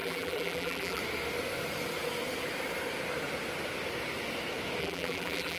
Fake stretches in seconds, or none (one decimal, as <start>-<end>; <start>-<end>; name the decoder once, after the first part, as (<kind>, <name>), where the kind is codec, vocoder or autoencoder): 0.0-1.0 (vocoder, BigVGAN v2); 4.8-5.6